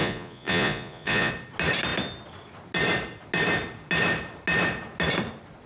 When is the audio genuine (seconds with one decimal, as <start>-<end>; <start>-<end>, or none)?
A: 1.3-5.7